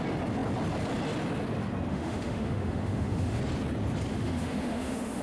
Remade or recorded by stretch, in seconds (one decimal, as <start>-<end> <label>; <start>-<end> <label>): 0.0-1.9 recorded; 1.9-3.4 remade; 3.4-4.1 recorded; 4.1-5.2 remade